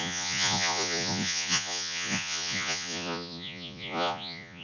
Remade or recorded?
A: remade